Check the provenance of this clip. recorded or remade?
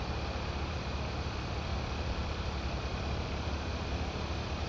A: remade